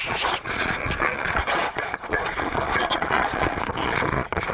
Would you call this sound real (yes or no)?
no